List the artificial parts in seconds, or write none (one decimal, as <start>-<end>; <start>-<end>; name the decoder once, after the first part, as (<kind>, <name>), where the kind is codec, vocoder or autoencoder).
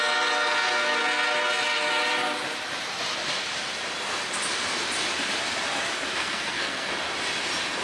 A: 6.2-6.9 (codec, SNAC)